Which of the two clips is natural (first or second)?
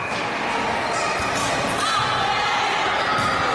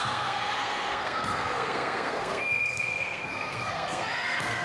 first